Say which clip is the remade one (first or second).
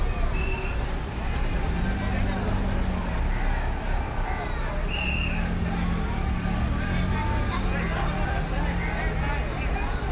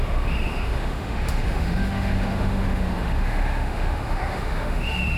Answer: second